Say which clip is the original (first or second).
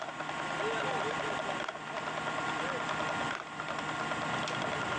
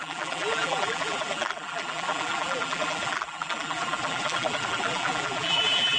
first